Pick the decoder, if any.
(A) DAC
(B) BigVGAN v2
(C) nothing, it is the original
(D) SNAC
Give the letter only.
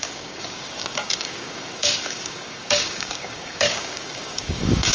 A